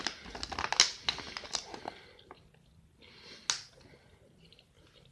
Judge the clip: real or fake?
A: real